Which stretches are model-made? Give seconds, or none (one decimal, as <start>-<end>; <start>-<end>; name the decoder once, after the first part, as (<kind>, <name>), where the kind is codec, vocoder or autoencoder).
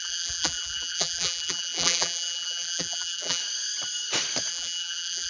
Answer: 0.0-3.4 (vocoder, BigVGAN v2); 4.5-5.3